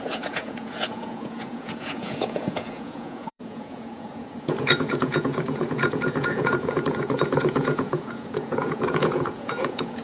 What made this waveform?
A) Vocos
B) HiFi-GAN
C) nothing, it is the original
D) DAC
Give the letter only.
A